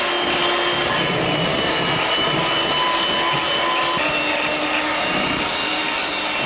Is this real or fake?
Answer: real